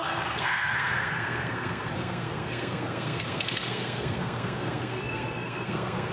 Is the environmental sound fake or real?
fake